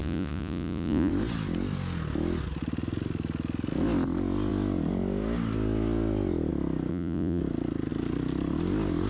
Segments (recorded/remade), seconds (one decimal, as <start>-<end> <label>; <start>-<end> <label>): 0.0-1.1 remade; 1.1-6.9 recorded; 6.9-7.4 remade; 7.4-9.1 recorded